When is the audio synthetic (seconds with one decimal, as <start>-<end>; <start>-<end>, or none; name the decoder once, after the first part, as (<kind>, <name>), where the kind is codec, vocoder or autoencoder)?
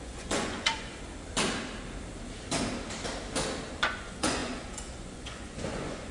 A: 0.0-0.9 (vocoder, Vocos); 3.7-6.1